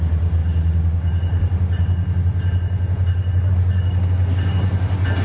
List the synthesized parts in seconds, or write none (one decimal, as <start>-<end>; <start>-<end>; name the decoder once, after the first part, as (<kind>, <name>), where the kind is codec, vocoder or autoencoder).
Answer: none